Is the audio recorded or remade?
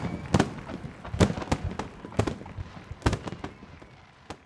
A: recorded